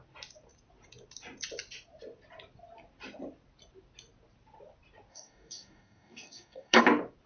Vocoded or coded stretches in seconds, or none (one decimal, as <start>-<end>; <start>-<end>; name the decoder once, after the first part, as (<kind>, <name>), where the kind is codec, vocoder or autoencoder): 5.1-6.8 (codec, DAC)